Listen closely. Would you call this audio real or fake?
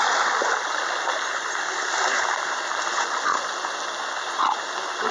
real